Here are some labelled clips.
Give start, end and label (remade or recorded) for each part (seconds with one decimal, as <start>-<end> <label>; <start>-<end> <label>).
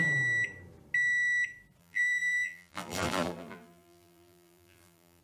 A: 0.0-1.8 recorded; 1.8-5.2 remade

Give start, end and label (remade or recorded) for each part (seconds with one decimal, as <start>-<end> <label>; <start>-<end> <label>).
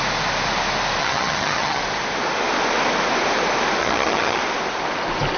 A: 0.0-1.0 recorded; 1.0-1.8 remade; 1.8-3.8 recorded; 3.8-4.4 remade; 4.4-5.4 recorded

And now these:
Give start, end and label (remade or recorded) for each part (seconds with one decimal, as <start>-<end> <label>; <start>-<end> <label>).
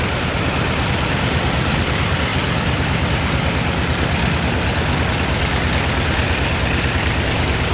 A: 0.0-7.7 recorded